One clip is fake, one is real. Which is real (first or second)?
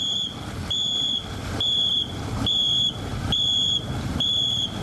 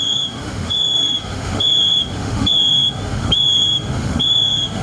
first